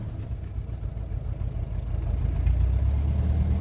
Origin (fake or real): real